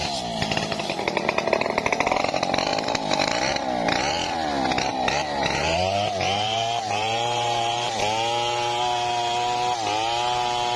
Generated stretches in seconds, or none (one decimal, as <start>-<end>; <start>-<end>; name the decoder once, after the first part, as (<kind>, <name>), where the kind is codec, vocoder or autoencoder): 4.9-8.0 (vocoder, BigVGAN v2)